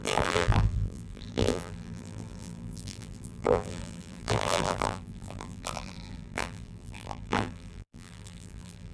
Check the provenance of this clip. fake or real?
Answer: fake